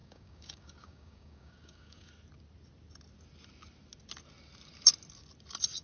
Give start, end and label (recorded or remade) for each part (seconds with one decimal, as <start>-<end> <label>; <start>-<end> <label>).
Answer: 0.0-2.1 remade; 2.1-5.8 recorded